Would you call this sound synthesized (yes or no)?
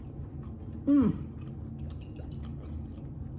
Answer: no